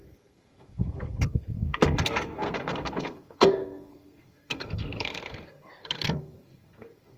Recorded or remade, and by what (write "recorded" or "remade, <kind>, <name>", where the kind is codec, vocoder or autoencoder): remade, codec, SNAC